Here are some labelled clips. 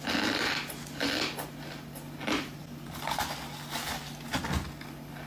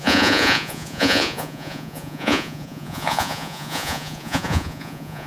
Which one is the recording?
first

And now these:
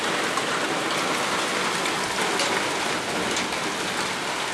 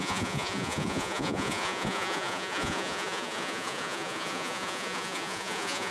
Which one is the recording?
first